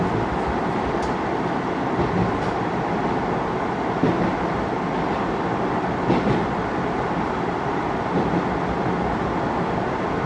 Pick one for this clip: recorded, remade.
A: recorded